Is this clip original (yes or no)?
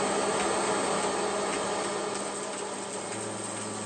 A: yes